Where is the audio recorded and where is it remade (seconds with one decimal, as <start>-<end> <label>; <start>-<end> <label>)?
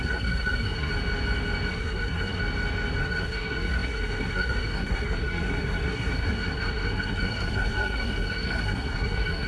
0.0-0.9 remade; 0.9-1.7 recorded; 1.7-2.4 remade; 2.4-3.0 recorded; 3.0-9.5 remade